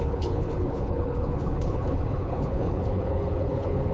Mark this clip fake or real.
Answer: fake